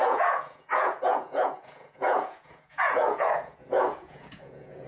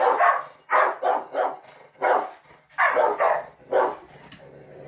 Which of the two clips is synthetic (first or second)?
first